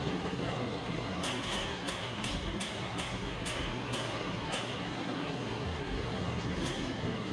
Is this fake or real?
fake